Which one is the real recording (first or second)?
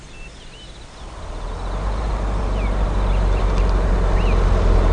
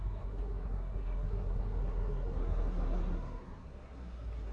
first